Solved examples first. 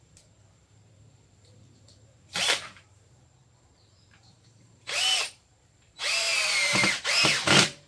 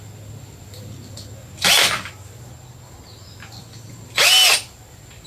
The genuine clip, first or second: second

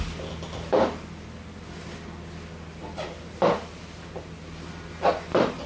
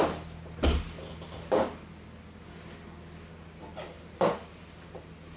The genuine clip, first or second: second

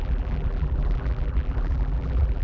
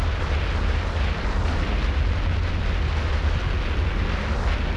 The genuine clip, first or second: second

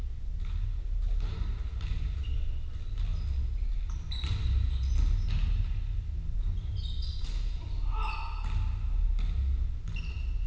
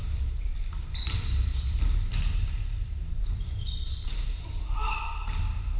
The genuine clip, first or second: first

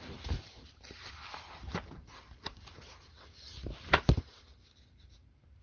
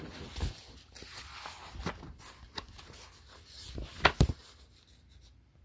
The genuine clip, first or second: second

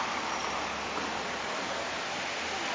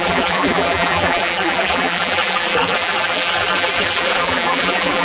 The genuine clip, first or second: first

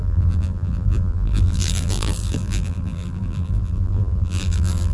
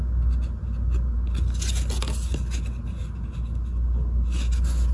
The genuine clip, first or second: second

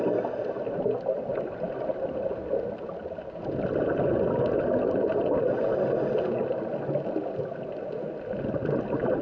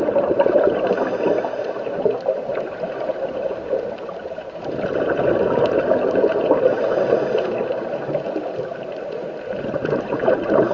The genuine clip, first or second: first